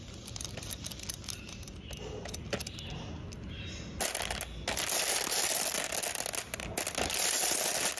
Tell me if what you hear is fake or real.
real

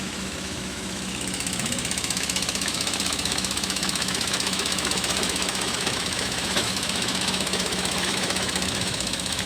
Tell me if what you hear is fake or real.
fake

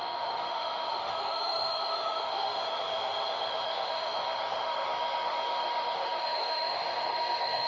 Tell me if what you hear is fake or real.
fake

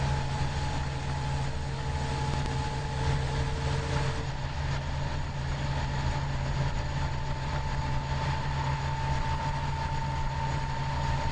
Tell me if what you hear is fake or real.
real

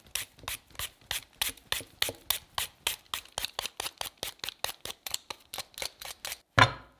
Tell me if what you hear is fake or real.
real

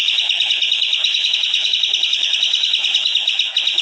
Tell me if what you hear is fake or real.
fake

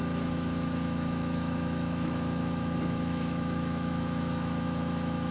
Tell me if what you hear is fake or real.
fake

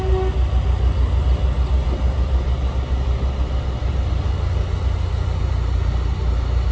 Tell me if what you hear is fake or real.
real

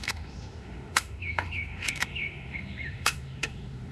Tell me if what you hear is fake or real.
fake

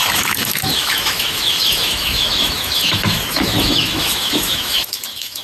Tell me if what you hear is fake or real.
fake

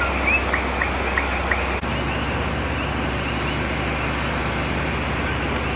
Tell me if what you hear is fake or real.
real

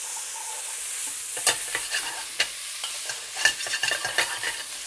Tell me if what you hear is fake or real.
real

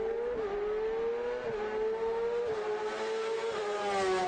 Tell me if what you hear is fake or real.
real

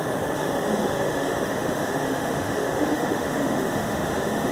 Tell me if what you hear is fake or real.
fake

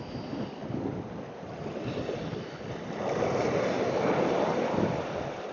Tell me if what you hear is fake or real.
real